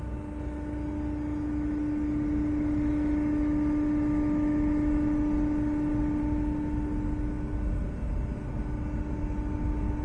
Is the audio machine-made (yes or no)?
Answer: no